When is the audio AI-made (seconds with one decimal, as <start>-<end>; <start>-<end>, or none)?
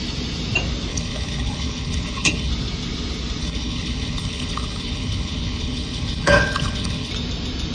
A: 0.9-2.5; 3.4-7.1